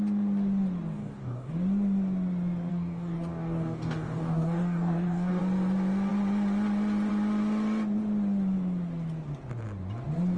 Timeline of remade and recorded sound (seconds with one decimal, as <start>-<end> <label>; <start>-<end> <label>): 0.0-1.0 recorded; 1.0-1.5 remade; 1.5-2.7 recorded; 2.7-5.4 remade; 5.4-10.4 recorded